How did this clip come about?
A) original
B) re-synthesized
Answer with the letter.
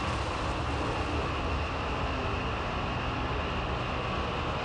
A